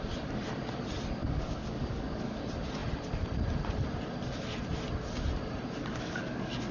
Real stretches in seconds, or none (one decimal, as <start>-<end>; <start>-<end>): 0.0-1.2; 2.4-5.8